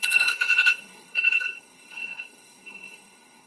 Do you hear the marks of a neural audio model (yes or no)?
yes